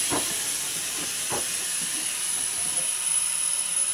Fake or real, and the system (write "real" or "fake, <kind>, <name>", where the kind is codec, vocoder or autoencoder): real